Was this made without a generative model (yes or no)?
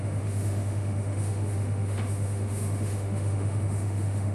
no